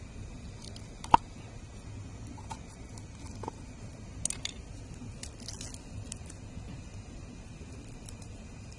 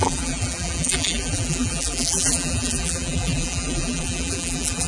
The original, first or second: first